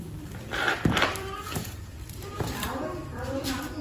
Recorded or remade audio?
remade